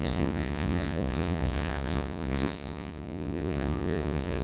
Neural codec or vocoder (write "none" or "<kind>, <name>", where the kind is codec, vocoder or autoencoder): vocoder, Vocos